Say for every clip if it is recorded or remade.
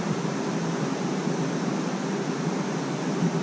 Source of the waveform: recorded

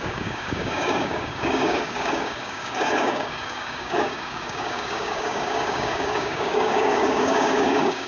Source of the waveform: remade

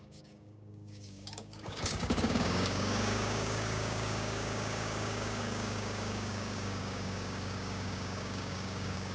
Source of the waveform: remade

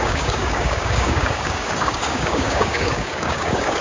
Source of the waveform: remade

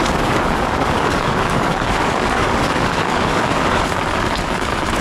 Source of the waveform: remade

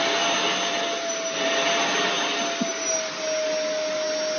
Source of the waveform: recorded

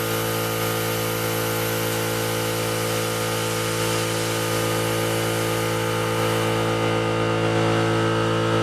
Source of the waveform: recorded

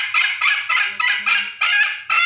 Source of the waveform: recorded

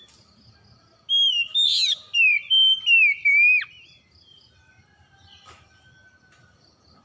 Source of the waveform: recorded